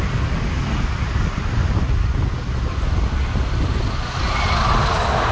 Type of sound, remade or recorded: recorded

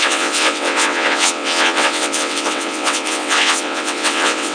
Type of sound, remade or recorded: remade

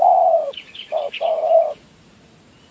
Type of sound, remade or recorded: remade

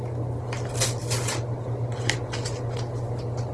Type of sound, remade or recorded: recorded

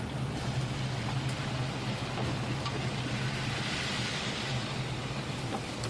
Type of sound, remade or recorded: recorded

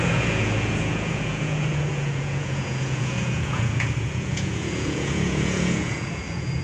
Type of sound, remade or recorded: remade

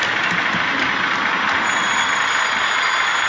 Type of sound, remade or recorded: recorded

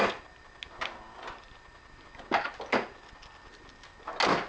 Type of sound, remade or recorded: recorded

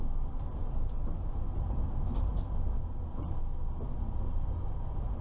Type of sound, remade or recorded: recorded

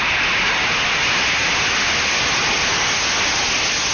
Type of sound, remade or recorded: recorded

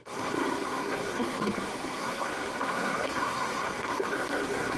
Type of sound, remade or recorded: remade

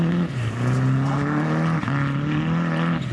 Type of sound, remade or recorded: recorded